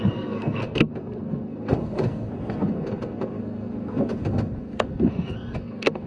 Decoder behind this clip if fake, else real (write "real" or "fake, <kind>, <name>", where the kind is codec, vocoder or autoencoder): fake, codec, SNAC